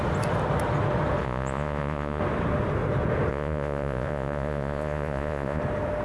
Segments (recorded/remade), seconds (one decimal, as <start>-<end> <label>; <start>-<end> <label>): 0.0-1.2 recorded; 1.2-2.2 remade; 2.2-3.3 recorded; 3.3-5.6 remade; 5.6-6.0 recorded

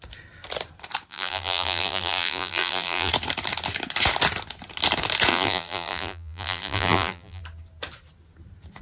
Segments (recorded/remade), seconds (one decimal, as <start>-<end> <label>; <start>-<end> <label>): 0.0-1.1 recorded; 1.1-3.1 remade; 3.1-5.3 recorded; 5.3-7.4 remade; 7.4-8.8 recorded